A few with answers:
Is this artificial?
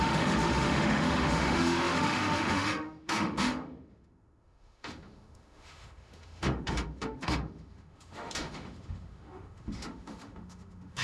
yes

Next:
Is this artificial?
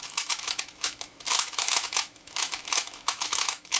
yes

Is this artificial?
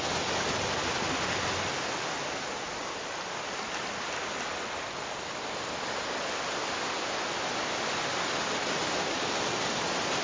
no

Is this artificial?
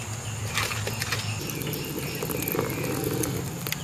no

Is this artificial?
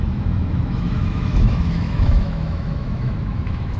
yes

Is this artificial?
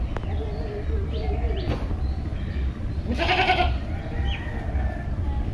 no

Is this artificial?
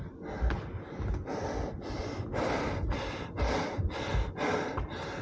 no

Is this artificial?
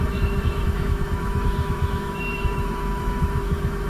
yes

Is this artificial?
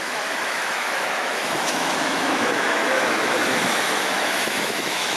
yes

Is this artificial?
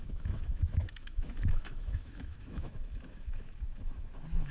yes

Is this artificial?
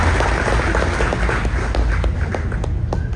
no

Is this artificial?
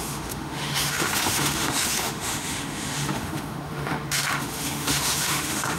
yes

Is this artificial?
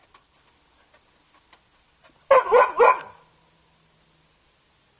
no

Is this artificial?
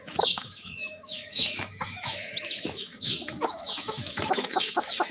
yes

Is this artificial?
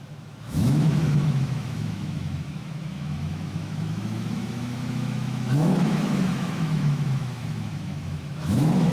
yes